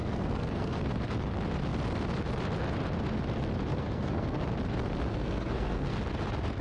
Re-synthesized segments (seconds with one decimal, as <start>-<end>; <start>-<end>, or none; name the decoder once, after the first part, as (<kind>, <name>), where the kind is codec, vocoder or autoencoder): 0.0-0.7 (codec, SNAC); 3.7-4.4; 5.1-6.0

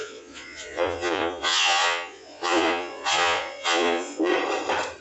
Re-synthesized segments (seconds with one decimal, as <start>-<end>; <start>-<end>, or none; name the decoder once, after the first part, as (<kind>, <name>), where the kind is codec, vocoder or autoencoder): 0.0-4.3 (vocoder, Vocos)

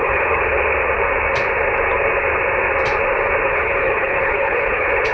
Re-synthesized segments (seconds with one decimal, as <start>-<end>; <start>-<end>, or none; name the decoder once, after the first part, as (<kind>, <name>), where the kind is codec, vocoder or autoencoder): 0.0-0.4 (codec, HILCodec); 3.5-5.1

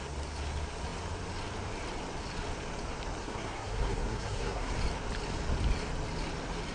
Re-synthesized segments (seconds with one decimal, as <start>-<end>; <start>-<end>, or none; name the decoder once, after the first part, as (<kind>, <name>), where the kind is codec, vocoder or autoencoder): 3.2-4.7 (codec, SNAC)

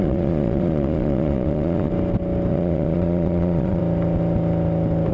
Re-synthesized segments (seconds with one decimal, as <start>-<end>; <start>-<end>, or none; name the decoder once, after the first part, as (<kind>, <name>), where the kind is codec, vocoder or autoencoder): 0.0-1.9 (vocoder, Vocos); 2.5-3.8

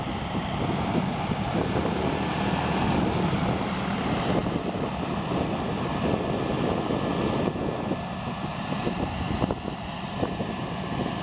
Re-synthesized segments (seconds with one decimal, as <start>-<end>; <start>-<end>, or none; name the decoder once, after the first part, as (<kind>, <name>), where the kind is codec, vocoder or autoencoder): 8.5-9.2 (vocoder, BigVGAN v2)